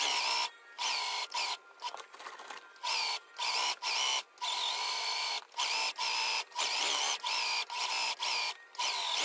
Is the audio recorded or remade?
recorded